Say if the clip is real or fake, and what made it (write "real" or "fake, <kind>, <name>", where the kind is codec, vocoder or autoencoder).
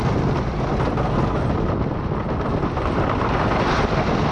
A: real